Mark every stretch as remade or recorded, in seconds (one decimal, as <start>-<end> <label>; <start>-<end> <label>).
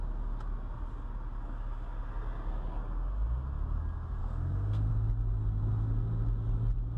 0.0-4.2 recorded; 4.2-4.9 remade; 4.9-7.0 recorded